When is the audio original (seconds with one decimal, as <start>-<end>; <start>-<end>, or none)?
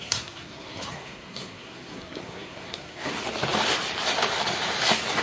3.1-5.2